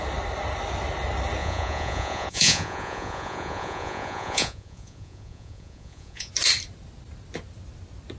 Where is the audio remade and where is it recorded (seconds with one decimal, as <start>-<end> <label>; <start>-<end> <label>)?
0.0-1.4 recorded; 1.4-6.3 remade; 6.3-8.2 recorded